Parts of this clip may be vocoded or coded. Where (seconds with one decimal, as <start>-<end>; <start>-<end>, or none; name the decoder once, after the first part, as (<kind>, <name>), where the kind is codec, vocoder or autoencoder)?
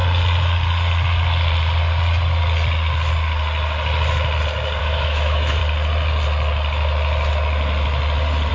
4.8-5.6 (autoencoder, DAC-VAE)